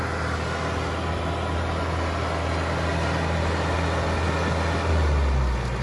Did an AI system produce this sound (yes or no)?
no